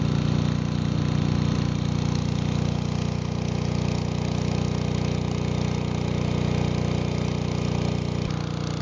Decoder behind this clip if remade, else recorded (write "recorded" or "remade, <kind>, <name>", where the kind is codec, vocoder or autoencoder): recorded